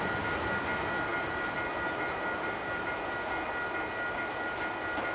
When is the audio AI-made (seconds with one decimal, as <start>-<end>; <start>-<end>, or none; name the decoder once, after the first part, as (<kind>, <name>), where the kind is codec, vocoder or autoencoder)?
none